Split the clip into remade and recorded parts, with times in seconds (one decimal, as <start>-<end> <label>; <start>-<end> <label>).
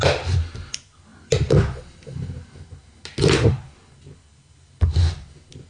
0.0-5.7 recorded